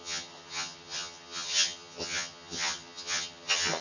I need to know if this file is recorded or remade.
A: remade